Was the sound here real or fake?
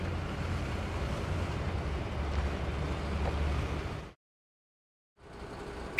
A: real